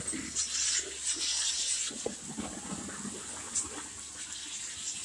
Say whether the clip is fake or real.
real